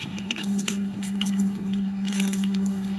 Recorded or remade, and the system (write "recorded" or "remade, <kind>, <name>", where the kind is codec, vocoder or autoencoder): remade, codec, SNAC